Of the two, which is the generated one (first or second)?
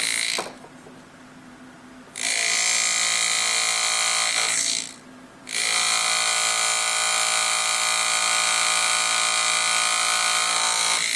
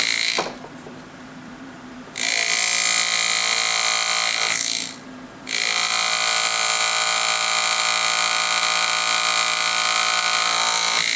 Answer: second